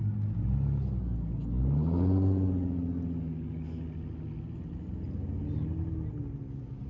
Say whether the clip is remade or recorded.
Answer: recorded